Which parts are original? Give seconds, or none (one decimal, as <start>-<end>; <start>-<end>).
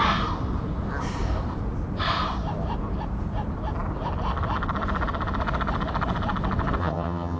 0.0-6.8